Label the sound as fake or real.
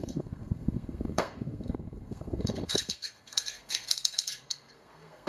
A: fake